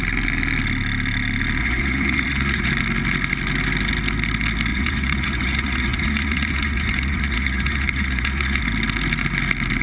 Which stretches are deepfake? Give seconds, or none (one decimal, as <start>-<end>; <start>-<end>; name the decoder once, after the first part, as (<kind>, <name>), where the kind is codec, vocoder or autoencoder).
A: 1.6-2.7 (vocoder, Vocos); 4.7-8.6

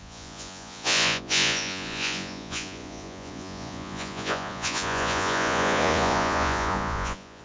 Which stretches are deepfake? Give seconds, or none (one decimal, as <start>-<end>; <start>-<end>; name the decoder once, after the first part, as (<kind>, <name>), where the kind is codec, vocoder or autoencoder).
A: 0.0-7.4 (vocoder, Vocos)